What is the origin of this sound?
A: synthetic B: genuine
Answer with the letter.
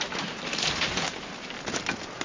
B